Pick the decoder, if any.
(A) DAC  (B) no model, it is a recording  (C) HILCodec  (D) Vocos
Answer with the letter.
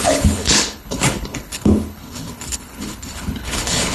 C